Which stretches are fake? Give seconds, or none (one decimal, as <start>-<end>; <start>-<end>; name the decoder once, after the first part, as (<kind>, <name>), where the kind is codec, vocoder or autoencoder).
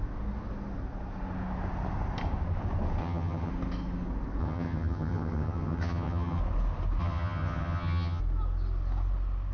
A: 3.0-3.5 (vocoder, HiFi-GAN); 4.4-6.4; 7.0-8.2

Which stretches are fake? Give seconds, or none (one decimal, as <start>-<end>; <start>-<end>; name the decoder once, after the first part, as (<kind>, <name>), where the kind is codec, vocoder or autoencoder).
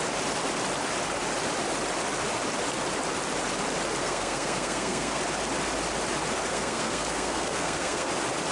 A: 4.0-5.2 (codec, SNAC); 6.5-8.1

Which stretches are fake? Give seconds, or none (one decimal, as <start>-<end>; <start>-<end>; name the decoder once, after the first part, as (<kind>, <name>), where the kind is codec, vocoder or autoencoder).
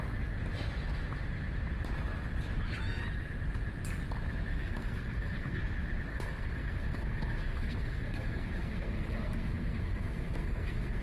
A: 4.5-5.6 (codec, SNAC); 6.1-11.0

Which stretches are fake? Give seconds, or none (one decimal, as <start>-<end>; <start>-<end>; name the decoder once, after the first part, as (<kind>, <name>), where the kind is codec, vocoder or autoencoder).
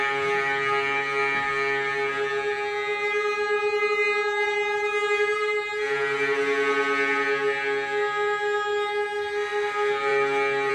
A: none